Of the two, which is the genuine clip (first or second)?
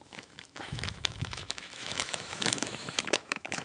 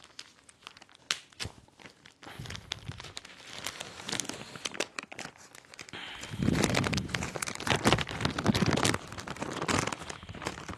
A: second